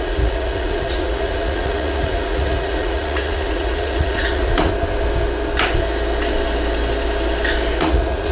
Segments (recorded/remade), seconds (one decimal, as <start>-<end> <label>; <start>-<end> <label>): 0.0-4.7 remade; 4.7-7.8 recorded; 7.8-8.3 remade